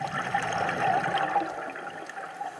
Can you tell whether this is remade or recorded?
recorded